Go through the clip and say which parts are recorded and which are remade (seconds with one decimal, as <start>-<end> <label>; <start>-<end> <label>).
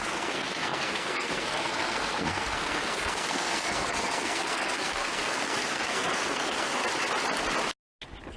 0.0-6.8 remade; 6.8-8.4 recorded